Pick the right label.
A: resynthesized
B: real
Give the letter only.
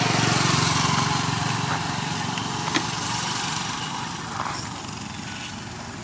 B